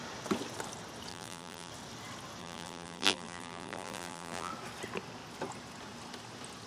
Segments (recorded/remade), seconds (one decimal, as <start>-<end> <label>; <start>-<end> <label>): 0.0-1.1 recorded; 1.1-1.7 remade; 1.7-2.4 recorded; 2.4-4.5 remade; 4.5-6.7 recorded